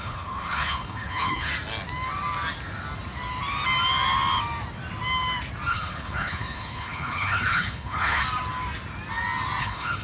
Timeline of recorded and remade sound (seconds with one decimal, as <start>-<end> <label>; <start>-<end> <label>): 0.0-1.5 remade; 1.5-5.7 recorded; 5.7-8.2 remade; 8.2-9.6 recorded; 9.6-10.0 remade

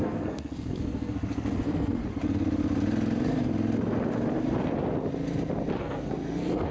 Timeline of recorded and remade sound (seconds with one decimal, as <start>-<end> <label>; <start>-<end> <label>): 0.0-2.0 remade; 2.0-5.8 recorded; 5.8-6.7 remade

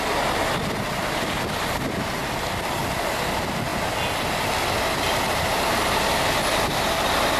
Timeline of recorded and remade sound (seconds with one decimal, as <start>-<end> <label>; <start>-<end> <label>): 0.0-2.2 recorded; 2.2-2.8 remade; 2.8-7.4 recorded

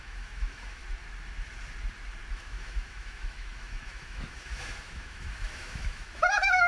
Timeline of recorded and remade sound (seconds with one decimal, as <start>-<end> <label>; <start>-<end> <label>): 0.0-0.8 remade; 0.8-2.3 recorded; 2.3-6.7 remade

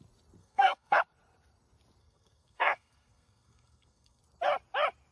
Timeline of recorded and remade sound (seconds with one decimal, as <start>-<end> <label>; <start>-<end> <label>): 0.0-0.4 recorded; 0.4-1.0 remade; 1.0-2.0 recorded; 2.0-4.2 remade; 4.2-5.1 recorded